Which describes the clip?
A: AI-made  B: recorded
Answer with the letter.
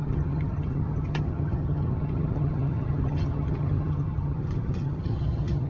A